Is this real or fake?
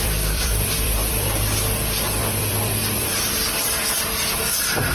fake